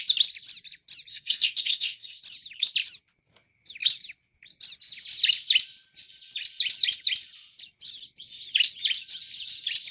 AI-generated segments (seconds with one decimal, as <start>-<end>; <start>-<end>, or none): 1.1-2.2